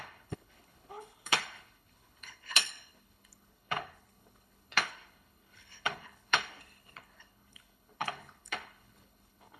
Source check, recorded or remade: remade